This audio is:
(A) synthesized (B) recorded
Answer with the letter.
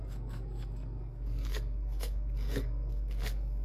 A